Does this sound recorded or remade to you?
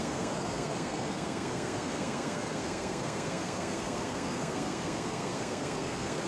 remade